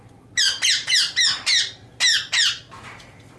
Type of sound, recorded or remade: recorded